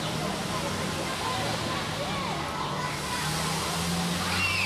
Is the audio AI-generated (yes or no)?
no